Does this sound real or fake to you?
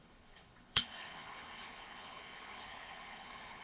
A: fake